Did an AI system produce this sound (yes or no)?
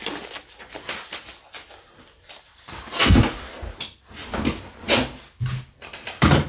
no